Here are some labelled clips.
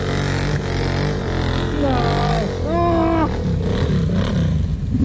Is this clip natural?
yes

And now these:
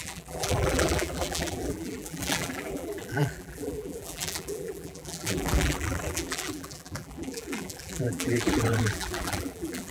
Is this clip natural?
no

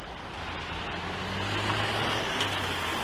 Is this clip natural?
yes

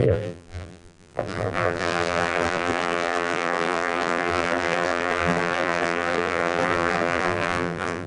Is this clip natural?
no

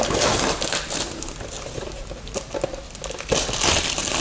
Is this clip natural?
yes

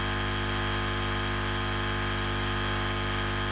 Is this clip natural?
yes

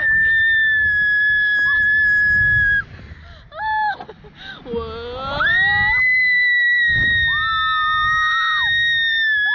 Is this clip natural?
yes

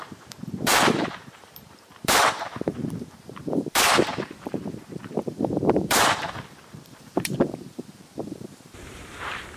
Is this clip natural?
no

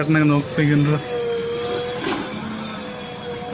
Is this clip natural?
yes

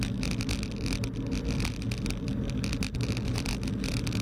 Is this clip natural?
yes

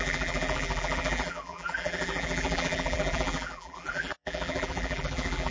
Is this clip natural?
no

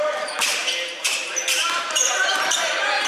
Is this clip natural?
no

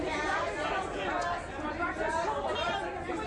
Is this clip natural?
yes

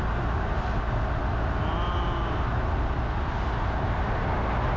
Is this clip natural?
yes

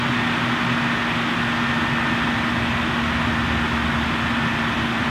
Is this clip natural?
yes